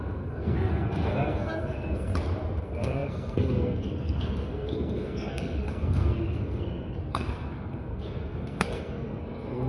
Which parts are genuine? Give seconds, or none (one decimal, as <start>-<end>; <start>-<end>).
2.1-2.6